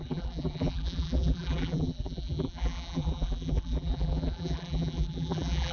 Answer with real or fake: fake